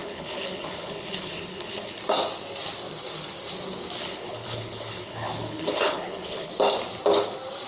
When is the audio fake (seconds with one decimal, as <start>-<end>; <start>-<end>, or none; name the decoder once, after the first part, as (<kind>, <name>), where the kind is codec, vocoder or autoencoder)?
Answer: 0.0-2.0 (codec, HILCodec); 4.0-6.5